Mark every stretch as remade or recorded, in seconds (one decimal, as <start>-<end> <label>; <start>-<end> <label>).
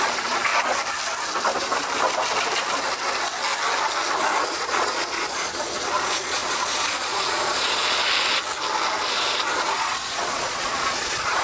0.0-0.5 remade; 0.5-4.5 recorded; 4.5-8.0 remade; 8.0-9.6 recorded; 9.6-11.4 remade